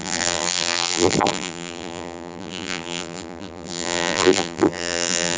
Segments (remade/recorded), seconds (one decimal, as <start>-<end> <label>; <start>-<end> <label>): 0.0-5.4 remade